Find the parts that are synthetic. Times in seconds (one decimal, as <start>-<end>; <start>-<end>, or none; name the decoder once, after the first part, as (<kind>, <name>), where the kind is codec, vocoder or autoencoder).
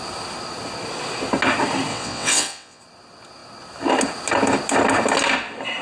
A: 1.9-2.8 (vocoder, WaveNeXt)